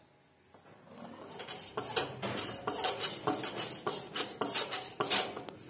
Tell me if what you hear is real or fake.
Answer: real